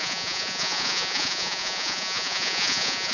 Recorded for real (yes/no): no